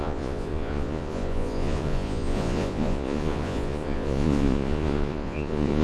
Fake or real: fake